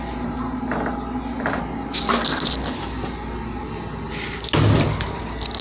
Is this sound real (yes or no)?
yes